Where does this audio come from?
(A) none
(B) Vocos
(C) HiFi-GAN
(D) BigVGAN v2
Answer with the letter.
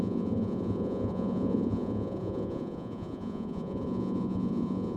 B